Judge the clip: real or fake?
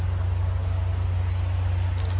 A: real